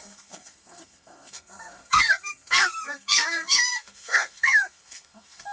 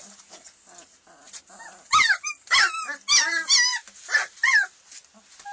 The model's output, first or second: first